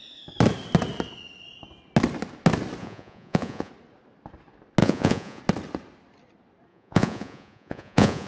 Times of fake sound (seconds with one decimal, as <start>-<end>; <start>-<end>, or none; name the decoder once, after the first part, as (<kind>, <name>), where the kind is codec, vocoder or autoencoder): 2.8-3.7 (vocoder, Vocos); 4.8-5.4; 6.7-8.3